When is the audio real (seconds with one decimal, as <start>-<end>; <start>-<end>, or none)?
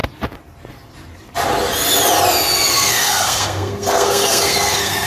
0.0-2.7